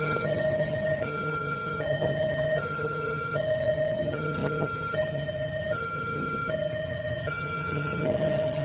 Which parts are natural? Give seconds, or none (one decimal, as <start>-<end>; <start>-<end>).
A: none